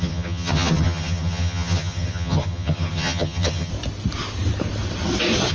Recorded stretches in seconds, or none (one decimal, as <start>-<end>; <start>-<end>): 3.7-5.5